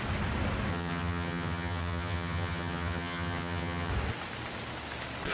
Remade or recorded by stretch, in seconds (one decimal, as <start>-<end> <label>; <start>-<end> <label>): 0.0-0.7 recorded; 0.7-3.9 remade; 3.9-5.3 recorded